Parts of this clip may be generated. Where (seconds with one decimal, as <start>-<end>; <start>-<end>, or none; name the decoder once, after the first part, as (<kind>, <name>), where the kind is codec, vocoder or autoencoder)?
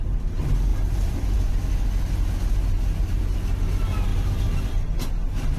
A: 0.7-1.5 (vocoder, BigVGAN v2); 4.1-4.7